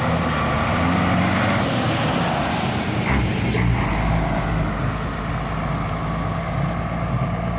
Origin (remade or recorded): recorded